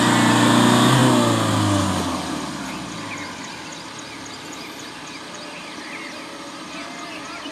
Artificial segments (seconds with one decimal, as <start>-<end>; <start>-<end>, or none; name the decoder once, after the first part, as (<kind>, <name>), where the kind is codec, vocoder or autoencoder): 3.7-6.7 (vocoder, BigVGAN v2)